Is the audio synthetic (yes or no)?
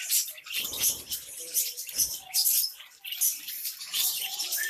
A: yes